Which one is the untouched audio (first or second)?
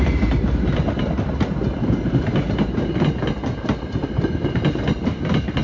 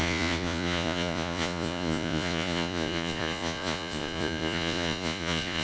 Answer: first